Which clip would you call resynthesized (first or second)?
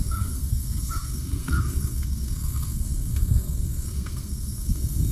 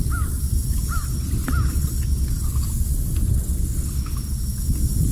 first